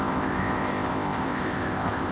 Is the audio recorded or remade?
remade